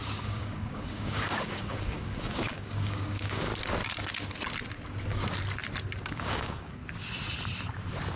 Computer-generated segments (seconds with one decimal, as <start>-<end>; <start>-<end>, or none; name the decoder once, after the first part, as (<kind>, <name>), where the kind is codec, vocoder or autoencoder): 0.0-3.5 (codec, DAC); 6.0-6.8